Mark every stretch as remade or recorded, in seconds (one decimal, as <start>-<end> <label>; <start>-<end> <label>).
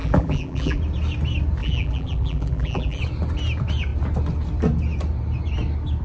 0.0-0.8 remade; 0.8-1.6 recorded; 1.6-3.0 remade; 3.0-6.0 recorded